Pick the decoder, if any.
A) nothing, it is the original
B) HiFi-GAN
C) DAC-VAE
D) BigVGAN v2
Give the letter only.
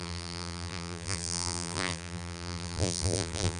D